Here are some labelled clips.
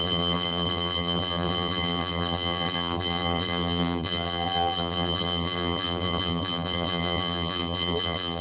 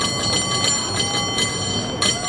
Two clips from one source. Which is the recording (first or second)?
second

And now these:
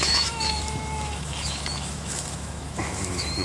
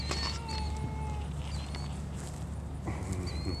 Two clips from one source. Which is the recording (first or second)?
second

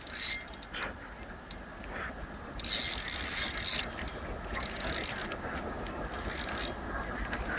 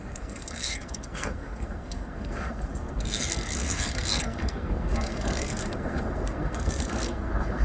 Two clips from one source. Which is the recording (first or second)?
first